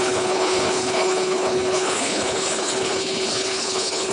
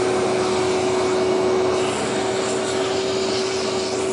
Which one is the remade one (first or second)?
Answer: first